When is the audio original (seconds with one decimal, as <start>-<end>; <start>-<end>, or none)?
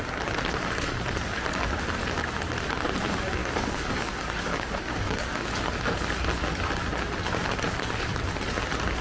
0.0-3.4; 5.5-9.0